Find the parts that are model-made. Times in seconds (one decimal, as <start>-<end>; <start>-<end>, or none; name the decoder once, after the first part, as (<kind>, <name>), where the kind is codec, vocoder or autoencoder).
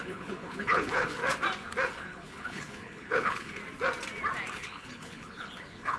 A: 0.0-1.2 (codec, HILCodec); 1.9-3.6; 4.5-6.0